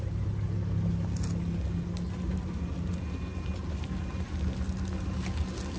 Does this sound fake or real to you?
real